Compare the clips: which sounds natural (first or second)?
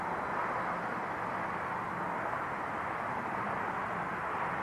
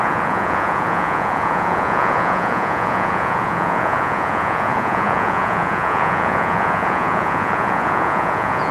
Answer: first